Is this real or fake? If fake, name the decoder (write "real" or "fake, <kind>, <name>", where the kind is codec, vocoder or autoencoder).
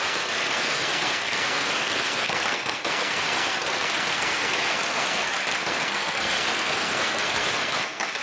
fake, codec, SNAC